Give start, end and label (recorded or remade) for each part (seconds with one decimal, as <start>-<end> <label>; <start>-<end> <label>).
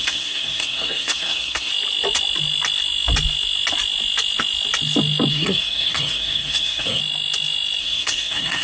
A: 0.0-1.7 remade; 1.7-5.3 recorded; 5.3-7.0 remade; 7.0-7.8 recorded; 7.8-8.6 remade